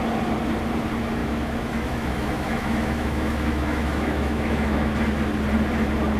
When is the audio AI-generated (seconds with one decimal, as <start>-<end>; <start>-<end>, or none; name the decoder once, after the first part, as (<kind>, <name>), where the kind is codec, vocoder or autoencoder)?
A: 1.2-4.9 (autoencoder, DAC-VAE)